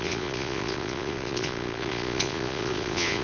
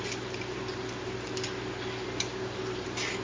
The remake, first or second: first